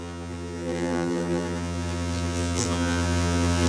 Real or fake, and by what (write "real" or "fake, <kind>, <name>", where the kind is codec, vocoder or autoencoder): fake, vocoder, BigVGAN v2